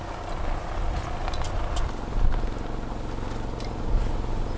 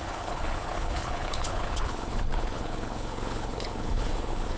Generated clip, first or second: second